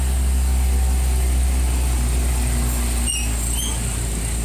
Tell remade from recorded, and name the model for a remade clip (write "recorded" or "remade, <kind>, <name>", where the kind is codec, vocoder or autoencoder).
recorded